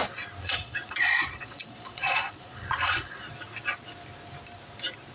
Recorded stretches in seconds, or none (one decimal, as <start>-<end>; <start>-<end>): 0.0-0.4; 3.3-5.1

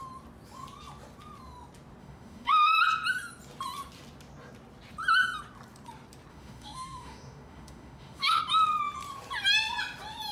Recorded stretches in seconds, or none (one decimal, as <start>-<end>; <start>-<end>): 0.0-2.0; 2.7-6.3; 8.4-10.3

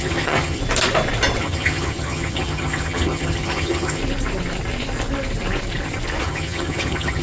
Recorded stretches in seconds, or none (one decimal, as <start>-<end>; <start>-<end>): 0.6-1.4; 4.0-6.2

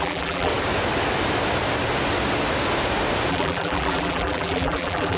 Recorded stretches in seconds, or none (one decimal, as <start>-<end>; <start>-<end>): 0.5-3.3

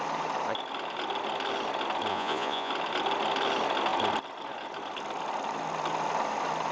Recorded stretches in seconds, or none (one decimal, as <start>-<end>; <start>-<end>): 0.0-2.1; 2.7-6.7